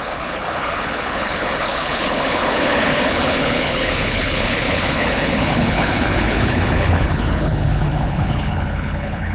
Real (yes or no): no